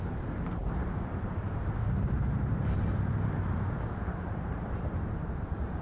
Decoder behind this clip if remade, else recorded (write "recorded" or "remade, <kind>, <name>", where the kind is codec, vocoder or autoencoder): remade, vocoder, BigVGAN v2